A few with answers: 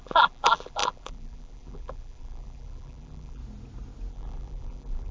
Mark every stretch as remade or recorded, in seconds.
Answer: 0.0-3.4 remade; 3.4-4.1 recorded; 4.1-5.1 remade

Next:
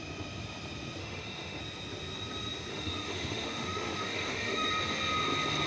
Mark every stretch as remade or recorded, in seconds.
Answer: 0.0-1.0 recorded; 1.0-1.6 remade; 1.6-2.7 recorded; 2.7-4.7 remade; 4.7-5.7 recorded

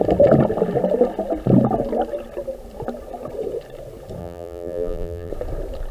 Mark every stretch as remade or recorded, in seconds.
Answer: 0.0-4.2 recorded; 4.2-5.3 remade; 5.3-5.9 recorded